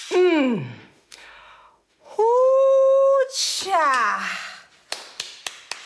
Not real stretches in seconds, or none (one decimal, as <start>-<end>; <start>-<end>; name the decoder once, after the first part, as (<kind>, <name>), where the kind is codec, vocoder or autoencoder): 0.8-3.6 (autoencoder, DAC-VAE)

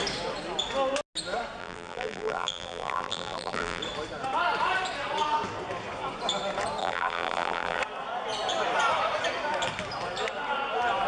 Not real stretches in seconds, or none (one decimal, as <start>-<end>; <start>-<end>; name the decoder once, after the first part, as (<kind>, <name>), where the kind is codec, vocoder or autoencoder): 1.6-3.8 (vocoder, BigVGAN v2); 6.8-7.8

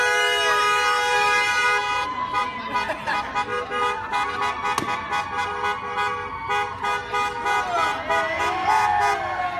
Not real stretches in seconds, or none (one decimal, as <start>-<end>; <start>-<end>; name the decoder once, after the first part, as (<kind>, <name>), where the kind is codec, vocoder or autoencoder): none

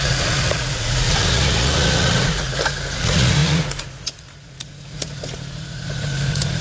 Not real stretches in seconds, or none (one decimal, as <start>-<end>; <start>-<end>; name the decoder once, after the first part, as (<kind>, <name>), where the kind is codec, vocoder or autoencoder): 0.0-6.6 (vocoder, Vocos)

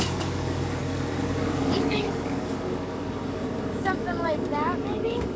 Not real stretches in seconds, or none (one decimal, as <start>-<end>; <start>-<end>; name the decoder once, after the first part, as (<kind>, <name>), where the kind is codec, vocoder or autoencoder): 0.0-5.4 (codec, DAC)

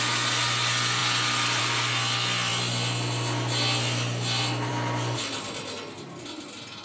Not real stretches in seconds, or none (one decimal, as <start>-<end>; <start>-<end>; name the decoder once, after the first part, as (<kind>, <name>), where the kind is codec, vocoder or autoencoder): none

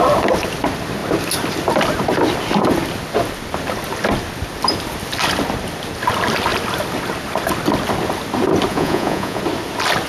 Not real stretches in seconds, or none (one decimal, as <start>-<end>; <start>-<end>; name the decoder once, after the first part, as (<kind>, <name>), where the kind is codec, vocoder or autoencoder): 8.7-9.4 (vocoder, Vocos)

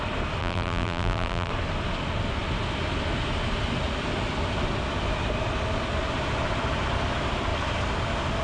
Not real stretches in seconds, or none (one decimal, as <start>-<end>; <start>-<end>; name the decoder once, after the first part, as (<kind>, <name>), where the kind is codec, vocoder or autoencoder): 0.4-1.5 (vocoder, BigVGAN v2)